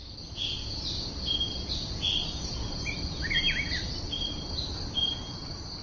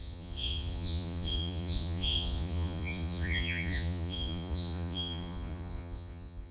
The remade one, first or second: second